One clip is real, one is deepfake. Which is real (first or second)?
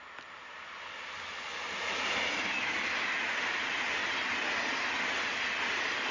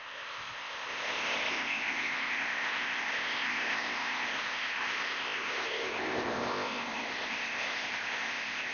first